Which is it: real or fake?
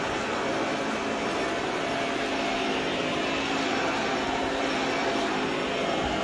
real